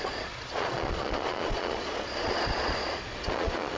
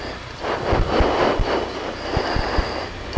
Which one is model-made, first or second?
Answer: first